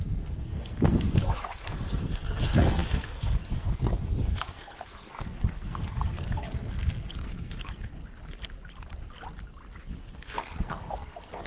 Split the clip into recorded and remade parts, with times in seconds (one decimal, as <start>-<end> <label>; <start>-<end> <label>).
0.0-7.9 remade; 7.9-9.8 recorded; 9.8-11.5 remade